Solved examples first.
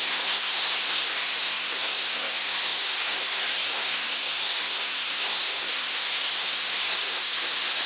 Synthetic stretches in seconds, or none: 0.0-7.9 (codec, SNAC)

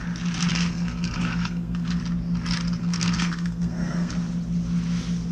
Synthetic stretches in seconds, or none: 0.5-2.0 (codec, SNAC); 2.8-4.1

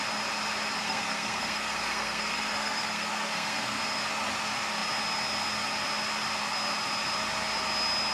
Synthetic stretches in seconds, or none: 0.8-3.8 (codec, SNAC)

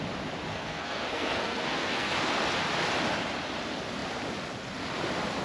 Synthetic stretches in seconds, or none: 0.5-2.2 (codec, SNAC)

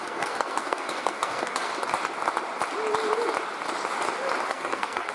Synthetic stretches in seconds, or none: 0.0-1.7 (codec, SNAC); 4.5-5.1

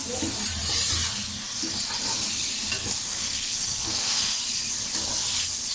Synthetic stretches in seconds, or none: 2.9-4.4 (codec, SNAC)